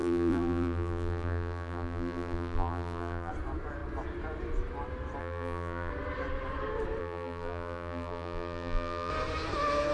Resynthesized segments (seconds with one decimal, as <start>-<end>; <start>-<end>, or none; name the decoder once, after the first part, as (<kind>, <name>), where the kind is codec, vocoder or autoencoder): 0.0-3.3 (vocoder, BigVGAN v2); 5.2-5.9; 7.0-9.1